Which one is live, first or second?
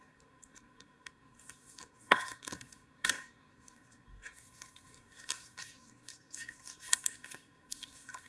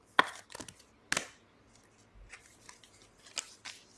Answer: second